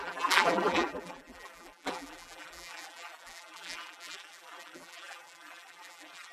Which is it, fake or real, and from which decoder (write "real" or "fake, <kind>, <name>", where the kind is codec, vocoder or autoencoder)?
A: fake, vocoder, BigVGAN v2